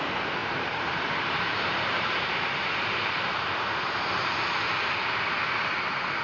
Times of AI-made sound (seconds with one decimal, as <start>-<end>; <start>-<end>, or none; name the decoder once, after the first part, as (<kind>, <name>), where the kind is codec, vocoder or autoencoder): 0.4-4.1 (vocoder, BigVGAN v2)